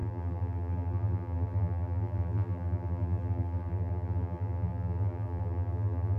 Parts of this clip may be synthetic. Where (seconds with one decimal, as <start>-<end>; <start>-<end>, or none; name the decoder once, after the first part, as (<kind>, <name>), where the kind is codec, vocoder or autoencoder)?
0.0-6.2 (vocoder, BigVGAN v2)